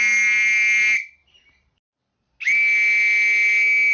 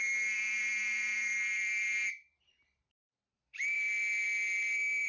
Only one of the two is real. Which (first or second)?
first